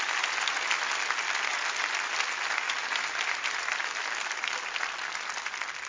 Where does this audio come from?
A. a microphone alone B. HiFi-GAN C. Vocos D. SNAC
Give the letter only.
A